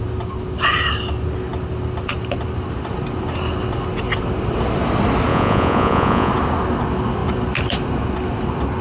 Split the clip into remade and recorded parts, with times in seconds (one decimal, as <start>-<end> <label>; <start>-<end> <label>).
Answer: 0.0-5.3 recorded; 5.3-6.3 remade; 6.3-8.8 recorded